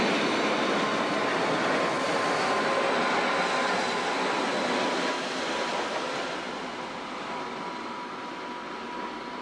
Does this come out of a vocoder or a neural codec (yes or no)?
no